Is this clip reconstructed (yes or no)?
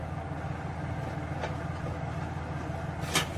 no